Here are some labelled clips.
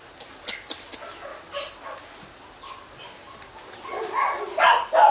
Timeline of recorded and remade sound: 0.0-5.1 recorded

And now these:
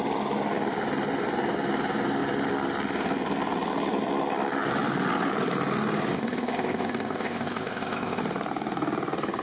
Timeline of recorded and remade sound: 0.0-6.1 recorded; 6.1-8.2 remade; 8.2-9.4 recorded

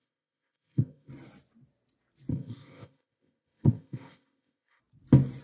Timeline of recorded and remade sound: 0.0-1.1 remade; 1.1-2.3 recorded; 2.3-4.8 remade; 4.8-5.4 recorded